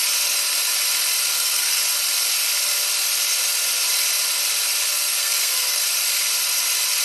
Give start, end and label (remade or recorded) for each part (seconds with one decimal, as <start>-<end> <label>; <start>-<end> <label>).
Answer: 0.0-1.3 recorded; 1.3-1.8 remade; 1.8-4.9 recorded; 4.9-5.8 remade; 5.8-7.0 recorded